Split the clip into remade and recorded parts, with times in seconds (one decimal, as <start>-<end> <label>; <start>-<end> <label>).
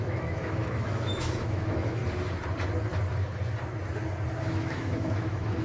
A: 0.0-2.0 remade; 2.0-4.4 recorded; 4.4-5.6 remade